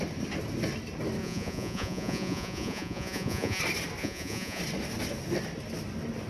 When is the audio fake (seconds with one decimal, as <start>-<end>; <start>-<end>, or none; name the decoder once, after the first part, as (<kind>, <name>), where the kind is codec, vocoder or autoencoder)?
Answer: 1.2-3.6 (vocoder, Vocos); 4.0-4.6